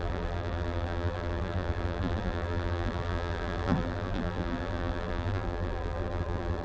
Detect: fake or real fake